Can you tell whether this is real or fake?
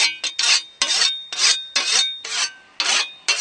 real